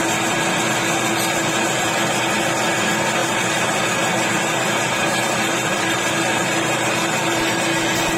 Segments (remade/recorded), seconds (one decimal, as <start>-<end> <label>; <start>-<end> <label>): 0.0-5.2 recorded; 5.2-7.6 remade; 7.6-8.2 recorded

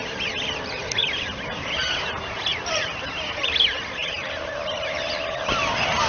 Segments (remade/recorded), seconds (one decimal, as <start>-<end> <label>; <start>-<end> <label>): 0.0-2.5 recorded; 2.5-3.1 remade; 3.1-4.0 recorded; 4.0-5.0 remade; 5.0-6.1 recorded